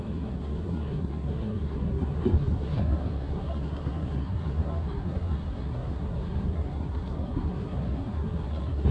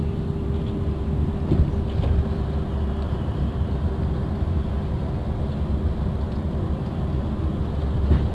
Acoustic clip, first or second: second